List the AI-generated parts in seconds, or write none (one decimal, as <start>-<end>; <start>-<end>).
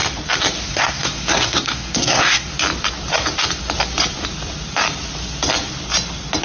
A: 0.7-2.5